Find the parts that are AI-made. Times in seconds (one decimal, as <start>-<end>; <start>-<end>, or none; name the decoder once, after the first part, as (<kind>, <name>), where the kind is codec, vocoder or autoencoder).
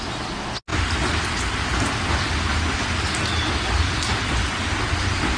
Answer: none